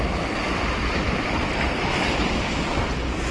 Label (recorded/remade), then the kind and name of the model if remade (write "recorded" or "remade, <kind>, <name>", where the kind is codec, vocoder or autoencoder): recorded